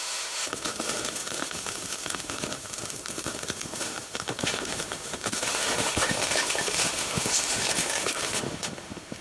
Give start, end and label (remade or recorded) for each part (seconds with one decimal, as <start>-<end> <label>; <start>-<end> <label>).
0.0-9.2 remade